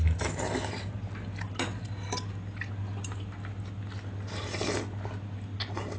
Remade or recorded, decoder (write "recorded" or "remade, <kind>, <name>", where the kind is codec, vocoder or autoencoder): recorded